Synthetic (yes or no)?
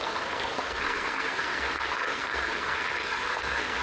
yes